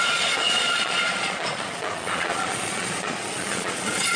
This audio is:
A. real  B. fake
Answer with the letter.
B